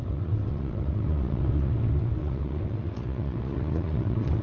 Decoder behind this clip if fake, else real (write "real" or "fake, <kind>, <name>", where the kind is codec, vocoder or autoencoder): fake, vocoder, WaveNeXt